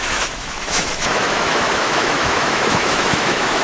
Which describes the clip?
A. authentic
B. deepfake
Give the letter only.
B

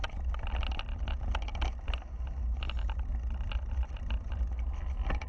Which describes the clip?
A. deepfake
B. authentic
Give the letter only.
B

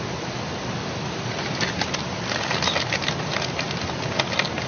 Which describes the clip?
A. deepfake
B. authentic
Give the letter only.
B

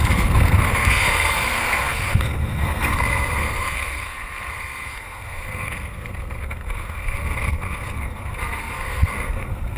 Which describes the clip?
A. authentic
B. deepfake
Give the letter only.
B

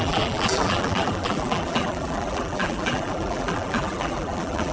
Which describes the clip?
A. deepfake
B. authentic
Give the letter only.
A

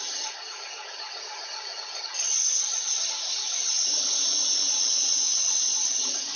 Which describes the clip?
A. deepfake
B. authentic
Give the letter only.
A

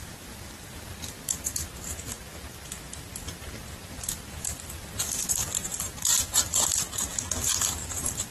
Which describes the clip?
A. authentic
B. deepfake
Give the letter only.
B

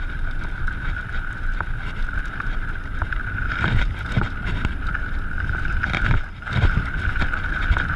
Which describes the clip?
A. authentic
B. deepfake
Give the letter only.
A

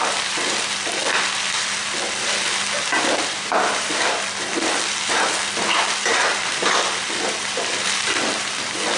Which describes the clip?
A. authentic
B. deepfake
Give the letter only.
B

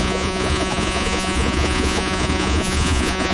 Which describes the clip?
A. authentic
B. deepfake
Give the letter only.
B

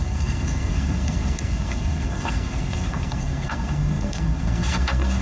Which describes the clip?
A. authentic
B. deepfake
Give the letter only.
B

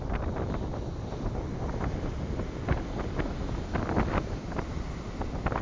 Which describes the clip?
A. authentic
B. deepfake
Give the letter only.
A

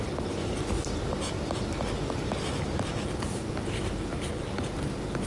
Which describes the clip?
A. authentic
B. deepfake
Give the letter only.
A